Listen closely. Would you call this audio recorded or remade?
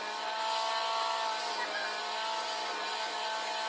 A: recorded